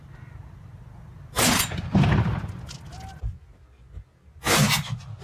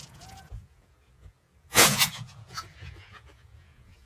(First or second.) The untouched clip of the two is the first